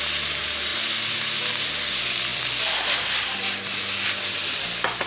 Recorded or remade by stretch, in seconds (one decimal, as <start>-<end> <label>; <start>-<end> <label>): 0.0-5.1 recorded